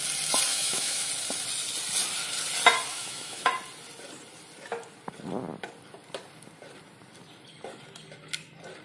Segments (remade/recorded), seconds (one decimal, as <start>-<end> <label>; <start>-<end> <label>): 0.0-0.5 recorded; 0.5-1.1 remade; 1.1-2.9 recorded; 2.9-3.5 remade; 3.5-8.8 recorded